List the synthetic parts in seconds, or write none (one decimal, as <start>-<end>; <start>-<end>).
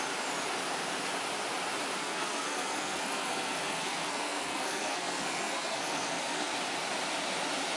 2.0-6.5